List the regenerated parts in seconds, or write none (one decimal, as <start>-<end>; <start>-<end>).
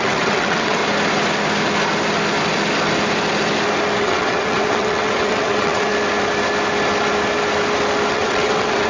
0.0-0.8; 4.0-5.9; 8.1-8.9